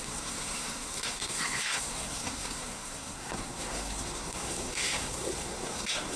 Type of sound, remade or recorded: remade